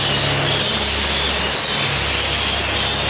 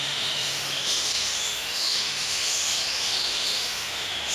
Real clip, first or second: first